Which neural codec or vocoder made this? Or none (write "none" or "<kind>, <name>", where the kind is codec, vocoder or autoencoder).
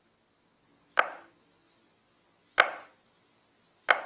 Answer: none